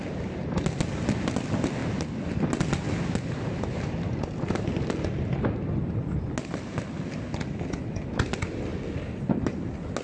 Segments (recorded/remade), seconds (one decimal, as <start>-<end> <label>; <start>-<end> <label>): 0.0-10.0 recorded